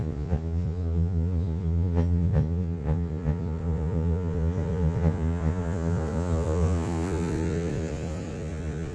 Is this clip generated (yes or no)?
yes